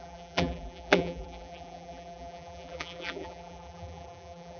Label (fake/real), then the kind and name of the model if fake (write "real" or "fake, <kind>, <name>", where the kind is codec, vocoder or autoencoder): fake, vocoder, BigVGAN v2